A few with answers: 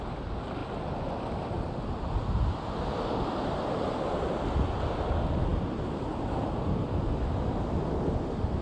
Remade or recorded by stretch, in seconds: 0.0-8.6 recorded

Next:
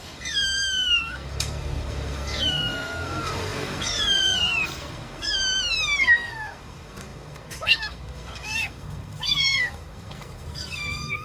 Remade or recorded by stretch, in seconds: 0.0-5.4 remade; 5.4-6.0 recorded; 6.0-11.2 remade

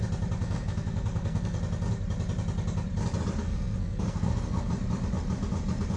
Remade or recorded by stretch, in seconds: 0.0-0.4 recorded; 0.4-1.6 remade; 1.6-3.4 recorded; 3.4-4.7 remade; 4.7-6.0 recorded

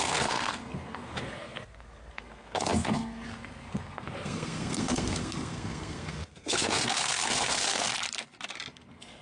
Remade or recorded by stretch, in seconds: 0.0-7.9 remade; 7.9-8.7 recorded; 8.7-9.2 remade

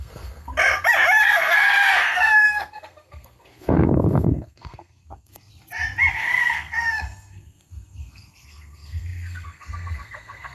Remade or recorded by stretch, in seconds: 0.0-0.5 remade; 0.5-1.2 recorded; 1.2-5.5 remade; 5.5-6.1 recorded; 6.1-10.5 remade